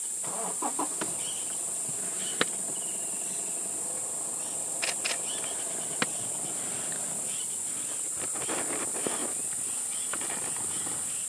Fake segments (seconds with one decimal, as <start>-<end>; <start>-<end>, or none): none